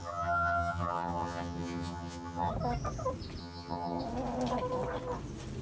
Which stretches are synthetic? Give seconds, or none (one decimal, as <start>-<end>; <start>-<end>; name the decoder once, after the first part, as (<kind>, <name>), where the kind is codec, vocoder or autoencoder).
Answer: 0.0-2.5 (vocoder, HiFi-GAN); 3.4-4.0